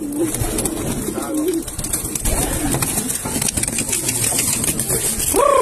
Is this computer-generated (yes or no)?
no